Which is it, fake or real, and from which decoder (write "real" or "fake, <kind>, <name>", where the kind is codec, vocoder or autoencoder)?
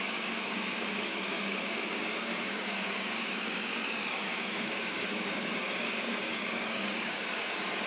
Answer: fake, codec, DAC